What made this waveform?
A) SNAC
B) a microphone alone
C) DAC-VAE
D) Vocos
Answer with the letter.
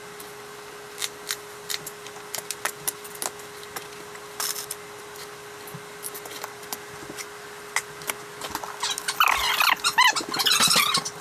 B